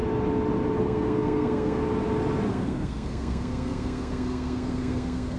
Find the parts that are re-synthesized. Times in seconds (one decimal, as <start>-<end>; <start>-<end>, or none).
0.8-1.8; 2.5-5.4